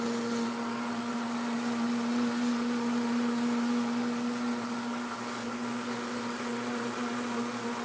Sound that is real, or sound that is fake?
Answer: real